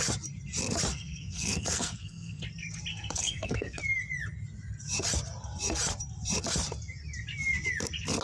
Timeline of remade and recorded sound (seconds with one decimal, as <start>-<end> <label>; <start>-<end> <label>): 0.0-0.9 recorded; 0.9-2.4 remade; 2.4-2.9 recorded; 2.9-3.8 remade; 3.8-8.2 recorded